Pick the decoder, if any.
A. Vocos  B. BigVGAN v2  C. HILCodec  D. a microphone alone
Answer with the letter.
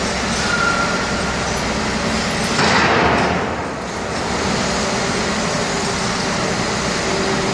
D